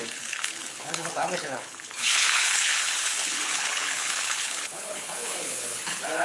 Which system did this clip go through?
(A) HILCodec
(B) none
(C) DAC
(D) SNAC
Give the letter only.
A